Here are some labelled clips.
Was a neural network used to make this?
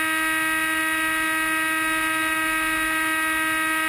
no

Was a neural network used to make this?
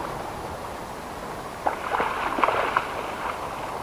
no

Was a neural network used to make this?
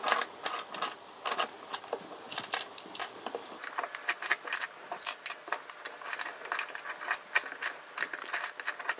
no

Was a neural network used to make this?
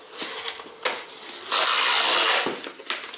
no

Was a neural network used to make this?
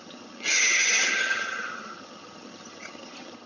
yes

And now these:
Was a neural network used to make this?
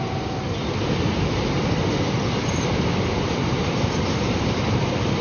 yes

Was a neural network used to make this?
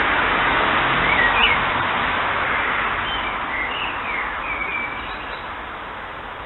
no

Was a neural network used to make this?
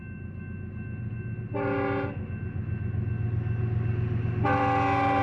no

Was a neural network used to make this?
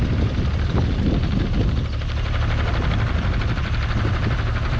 no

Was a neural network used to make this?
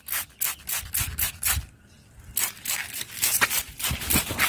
no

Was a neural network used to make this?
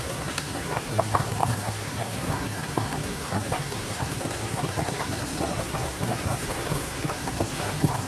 yes